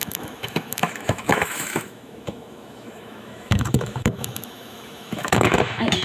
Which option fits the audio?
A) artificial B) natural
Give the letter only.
A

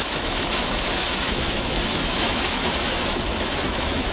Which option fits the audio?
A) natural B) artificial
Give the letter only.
B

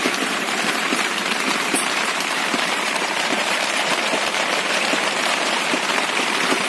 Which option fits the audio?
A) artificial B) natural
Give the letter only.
A